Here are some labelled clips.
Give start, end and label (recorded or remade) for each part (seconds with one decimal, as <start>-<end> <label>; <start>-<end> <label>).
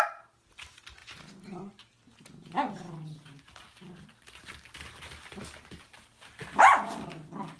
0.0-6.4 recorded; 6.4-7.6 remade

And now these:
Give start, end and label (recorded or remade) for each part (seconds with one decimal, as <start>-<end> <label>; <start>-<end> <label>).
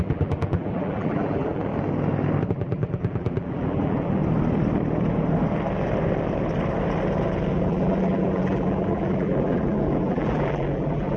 0.0-1.7 remade; 1.7-2.5 recorded; 2.5-4.2 remade; 4.2-7.5 recorded; 7.5-11.2 remade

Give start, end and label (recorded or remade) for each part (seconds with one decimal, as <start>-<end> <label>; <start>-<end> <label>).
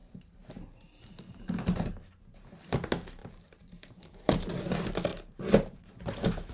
0.0-2.5 remade; 2.5-3.2 recorded; 3.2-4.6 remade; 4.6-5.1 recorded; 5.1-6.0 remade; 6.0-6.5 recorded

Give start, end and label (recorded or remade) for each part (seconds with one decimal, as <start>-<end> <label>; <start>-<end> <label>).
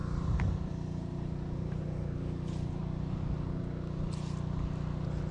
0.0-2.8 remade; 2.8-5.3 recorded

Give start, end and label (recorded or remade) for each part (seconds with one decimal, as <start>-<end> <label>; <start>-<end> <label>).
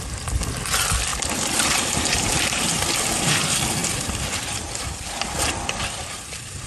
0.0-1.1 recorded; 1.1-2.6 remade; 2.6-6.7 recorded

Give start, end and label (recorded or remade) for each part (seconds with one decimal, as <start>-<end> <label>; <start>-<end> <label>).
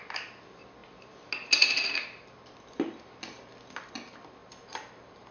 0.0-4.4 recorded; 4.4-5.3 remade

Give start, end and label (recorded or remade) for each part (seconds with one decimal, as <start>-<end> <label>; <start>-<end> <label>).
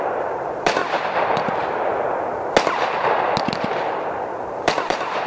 0.0-0.8 remade; 0.8-4.0 recorded; 4.0-5.3 remade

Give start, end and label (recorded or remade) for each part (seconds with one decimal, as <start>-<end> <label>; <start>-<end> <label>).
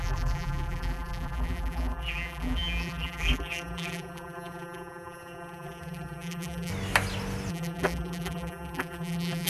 0.0-6.7 remade; 6.7-7.5 recorded; 7.5-9.5 remade